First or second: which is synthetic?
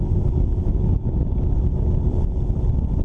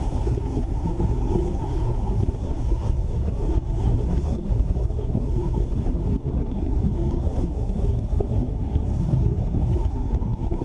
second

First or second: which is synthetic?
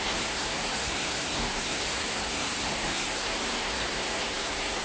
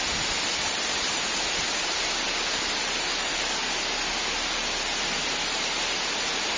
first